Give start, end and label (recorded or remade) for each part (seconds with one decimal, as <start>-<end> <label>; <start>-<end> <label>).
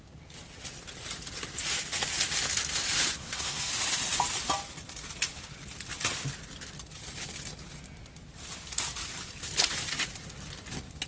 0.0-3.2 recorded; 3.2-3.7 remade; 3.7-11.1 recorded